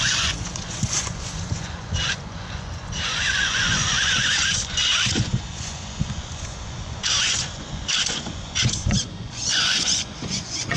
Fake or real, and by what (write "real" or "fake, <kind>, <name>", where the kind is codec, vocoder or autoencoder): fake, vocoder, Vocos